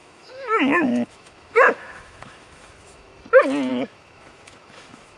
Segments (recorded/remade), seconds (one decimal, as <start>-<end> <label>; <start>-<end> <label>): 0.0-3.1 remade; 3.1-3.7 recorded; 3.7-5.2 remade